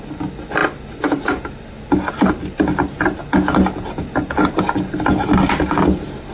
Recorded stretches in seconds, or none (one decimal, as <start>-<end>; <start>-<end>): 0.0-6.3